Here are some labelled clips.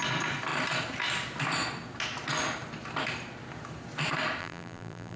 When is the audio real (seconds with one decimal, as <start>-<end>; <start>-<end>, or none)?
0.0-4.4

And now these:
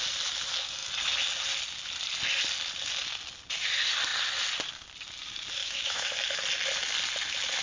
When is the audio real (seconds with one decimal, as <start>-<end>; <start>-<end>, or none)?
0.0-5.6; 6.4-7.6

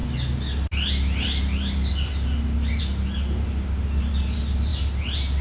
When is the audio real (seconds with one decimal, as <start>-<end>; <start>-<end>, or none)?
0.0-5.4

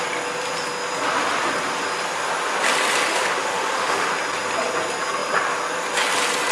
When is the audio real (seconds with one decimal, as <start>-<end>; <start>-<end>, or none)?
0.0-3.1; 4.1-6.5